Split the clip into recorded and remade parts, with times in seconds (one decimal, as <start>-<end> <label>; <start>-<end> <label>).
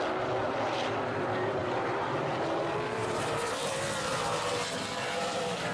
0.0-1.6 recorded; 1.6-4.4 remade; 4.4-5.7 recorded